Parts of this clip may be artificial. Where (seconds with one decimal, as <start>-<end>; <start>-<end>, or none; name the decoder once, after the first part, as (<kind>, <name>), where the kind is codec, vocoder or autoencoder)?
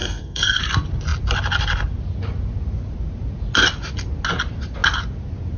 0.0-0.6 (codec, SNAC)